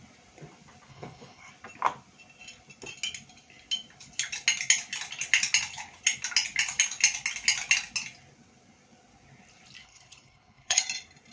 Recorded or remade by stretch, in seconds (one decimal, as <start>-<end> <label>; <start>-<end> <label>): 0.0-0.9 recorded; 0.9-1.5 remade; 1.5-9.8 recorded; 9.8-10.8 remade; 10.8-11.3 recorded